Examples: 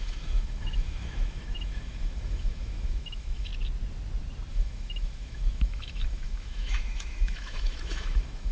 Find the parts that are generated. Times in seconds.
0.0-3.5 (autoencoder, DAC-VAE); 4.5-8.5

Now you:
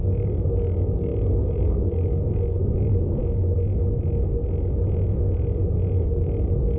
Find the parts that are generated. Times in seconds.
0.0-3.2 (codec, DAC); 6.1-6.8

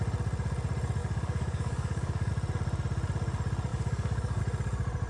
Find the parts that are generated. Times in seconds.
1.0-2.3 (codec, DAC); 3.7-4.4

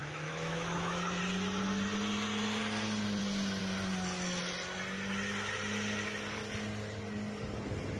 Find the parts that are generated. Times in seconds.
0.0-1.2 (autoencoder, DAC-VAE)

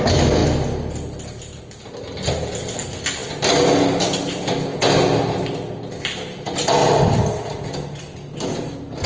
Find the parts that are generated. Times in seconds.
none

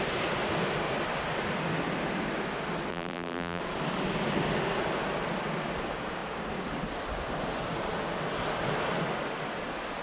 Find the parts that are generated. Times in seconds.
2.9-3.6 (vocoder, BigVGAN v2)